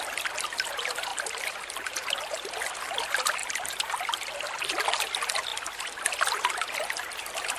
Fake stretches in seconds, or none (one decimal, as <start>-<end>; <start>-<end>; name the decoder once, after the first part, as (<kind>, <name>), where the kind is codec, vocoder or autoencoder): 1.1-2.6 (vocoder, BigVGAN v2); 3.4-4.3; 5.5-6.4